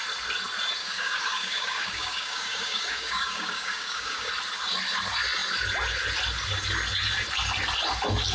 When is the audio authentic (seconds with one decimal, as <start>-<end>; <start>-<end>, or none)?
0.0-0.8; 4.3-8.3